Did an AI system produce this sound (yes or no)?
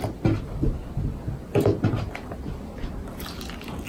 no